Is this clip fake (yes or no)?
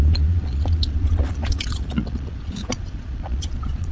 yes